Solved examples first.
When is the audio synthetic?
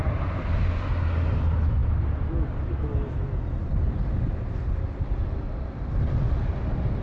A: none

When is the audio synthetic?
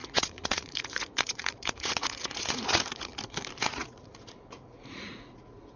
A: 0.0-3.1 (vocoder, Vocos); 3.6-5.8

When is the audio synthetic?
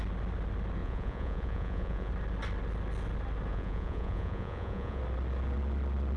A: 0.8-2.1 (vocoder, Vocos); 3.5-5.0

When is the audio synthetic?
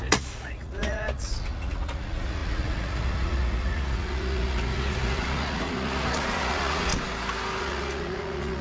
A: 0.0-6.9 (vocoder, Vocos); 7.6-8.6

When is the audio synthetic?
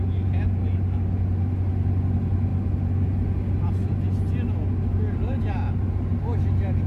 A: none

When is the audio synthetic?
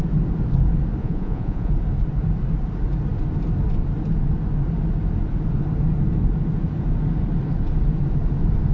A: 1.0-1.7 (vocoder, Vocos)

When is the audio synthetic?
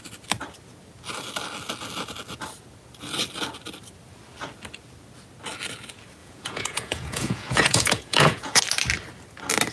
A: 6.2-8.6 (vocoder, Vocos)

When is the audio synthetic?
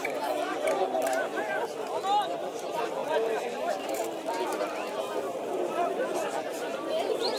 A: none